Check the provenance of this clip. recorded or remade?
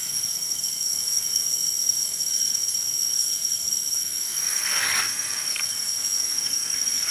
remade